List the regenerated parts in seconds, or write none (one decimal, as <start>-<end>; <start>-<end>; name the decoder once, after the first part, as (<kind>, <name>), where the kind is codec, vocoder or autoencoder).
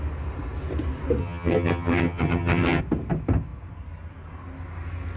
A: 1.2-2.8 (vocoder, HiFi-GAN)